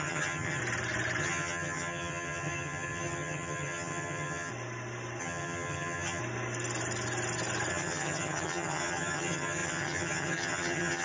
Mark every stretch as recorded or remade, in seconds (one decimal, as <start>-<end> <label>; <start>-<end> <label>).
0.0-0.6 remade; 0.6-1.2 recorded; 1.2-4.5 remade; 4.5-5.2 recorded; 5.2-6.2 remade; 6.2-7.7 recorded; 7.7-11.0 remade